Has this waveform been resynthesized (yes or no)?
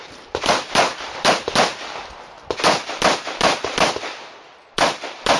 no